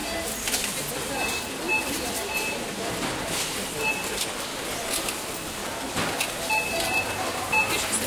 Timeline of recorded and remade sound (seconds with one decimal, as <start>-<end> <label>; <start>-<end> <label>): 0.0-8.1 recorded